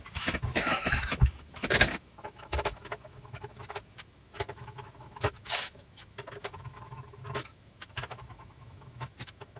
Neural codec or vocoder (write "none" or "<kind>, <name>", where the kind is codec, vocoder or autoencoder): autoencoder, DAC-VAE